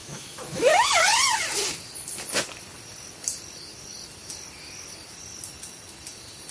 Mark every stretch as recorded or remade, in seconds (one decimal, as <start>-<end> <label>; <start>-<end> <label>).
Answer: 0.0-0.9 remade; 0.9-6.5 recorded